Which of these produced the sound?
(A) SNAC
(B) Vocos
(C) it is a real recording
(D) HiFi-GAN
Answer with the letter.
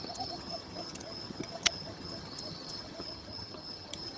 D